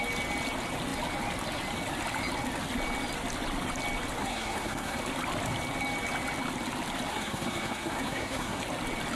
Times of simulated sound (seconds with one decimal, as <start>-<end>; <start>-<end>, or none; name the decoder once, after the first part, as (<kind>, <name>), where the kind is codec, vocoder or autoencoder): 4.2-5.0 (codec, SNAC); 7.1-8.6